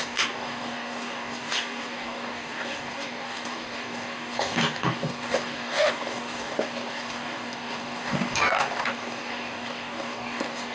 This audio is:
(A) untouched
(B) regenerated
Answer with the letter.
B